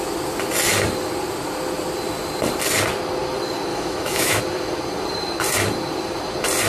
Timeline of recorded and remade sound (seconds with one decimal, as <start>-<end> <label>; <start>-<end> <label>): 0.0-3.7 recorded; 3.7-4.4 remade; 4.4-6.7 recorded